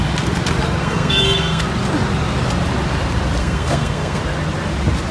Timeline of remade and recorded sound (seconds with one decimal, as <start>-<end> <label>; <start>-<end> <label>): 0.0-0.8 recorded; 0.8-1.6 remade; 1.6-3.4 recorded; 3.4-4.2 remade; 4.2-5.1 recorded